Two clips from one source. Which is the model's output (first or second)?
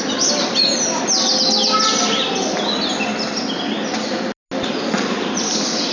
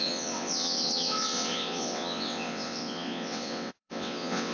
second